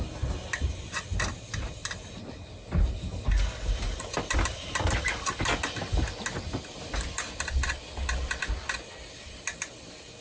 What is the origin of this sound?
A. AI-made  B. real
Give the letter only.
B